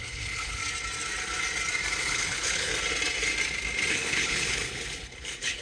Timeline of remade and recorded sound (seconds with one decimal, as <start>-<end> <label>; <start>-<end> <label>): 0.0-0.6 remade; 0.6-2.0 recorded; 2.0-2.7 remade; 2.7-3.9 recorded; 3.9-5.6 remade